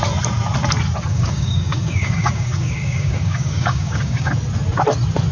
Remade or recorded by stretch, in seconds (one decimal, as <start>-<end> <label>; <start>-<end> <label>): 0.0-1.1 recorded; 1.1-4.3 remade; 4.3-5.3 recorded